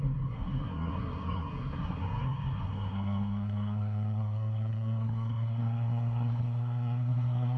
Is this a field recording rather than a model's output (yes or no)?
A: no